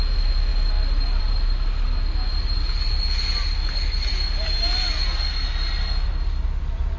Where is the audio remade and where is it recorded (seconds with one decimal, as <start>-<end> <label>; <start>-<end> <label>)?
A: 0.0-7.0 recorded